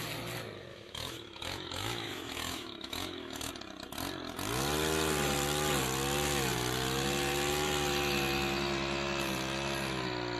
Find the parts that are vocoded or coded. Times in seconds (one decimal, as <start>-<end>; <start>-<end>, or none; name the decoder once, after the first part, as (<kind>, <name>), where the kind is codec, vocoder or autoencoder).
0.7-3.5 (autoencoder, DAC-VAE)